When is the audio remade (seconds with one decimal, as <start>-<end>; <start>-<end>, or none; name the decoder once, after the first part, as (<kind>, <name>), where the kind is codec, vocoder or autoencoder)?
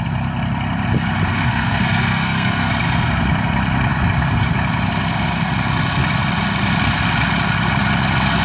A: 1.3-2.7 (codec, SNAC)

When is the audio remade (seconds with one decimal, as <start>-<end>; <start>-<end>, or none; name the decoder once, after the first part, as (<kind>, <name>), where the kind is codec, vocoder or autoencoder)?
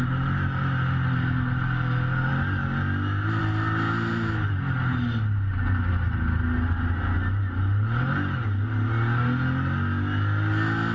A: none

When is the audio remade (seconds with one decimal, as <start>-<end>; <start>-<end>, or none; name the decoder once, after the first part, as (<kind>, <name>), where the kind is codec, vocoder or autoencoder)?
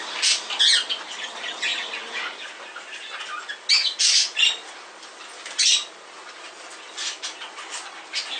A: none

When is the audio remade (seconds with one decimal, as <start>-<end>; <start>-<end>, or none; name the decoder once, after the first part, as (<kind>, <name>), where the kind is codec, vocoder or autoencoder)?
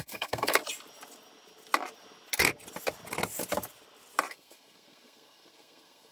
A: 0.0-0.6 (codec, SNAC); 4.3-6.1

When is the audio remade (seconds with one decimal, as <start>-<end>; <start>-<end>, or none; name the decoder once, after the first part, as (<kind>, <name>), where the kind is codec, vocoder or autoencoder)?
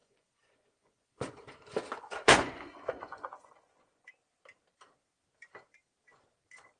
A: 0.0-4.1 (vocoder, Vocos)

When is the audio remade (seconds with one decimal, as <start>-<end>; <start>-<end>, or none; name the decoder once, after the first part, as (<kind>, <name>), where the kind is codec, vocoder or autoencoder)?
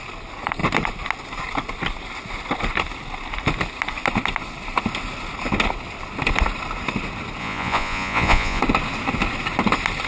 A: 7.4-8.6 (vocoder, Vocos)